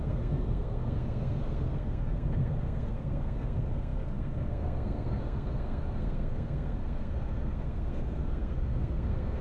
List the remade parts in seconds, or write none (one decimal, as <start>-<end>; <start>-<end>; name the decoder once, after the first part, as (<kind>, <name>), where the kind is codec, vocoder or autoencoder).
0.0-9.4 (codec, SNAC)